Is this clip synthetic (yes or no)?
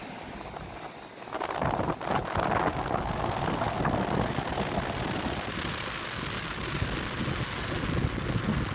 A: no